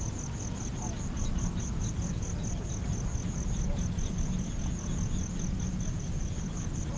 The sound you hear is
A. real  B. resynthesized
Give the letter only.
A